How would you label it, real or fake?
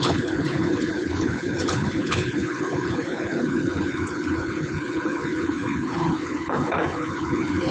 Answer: fake